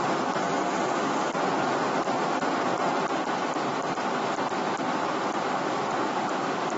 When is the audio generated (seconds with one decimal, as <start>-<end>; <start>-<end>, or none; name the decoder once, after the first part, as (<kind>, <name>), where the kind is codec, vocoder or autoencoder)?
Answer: 0.4-1.3 (codec, DAC)